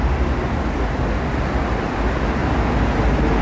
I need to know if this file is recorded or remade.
recorded